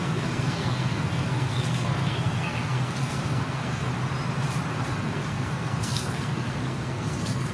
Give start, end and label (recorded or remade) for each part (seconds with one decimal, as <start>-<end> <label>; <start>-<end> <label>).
0.0-3.9 remade; 3.9-4.7 recorded; 4.7-7.5 remade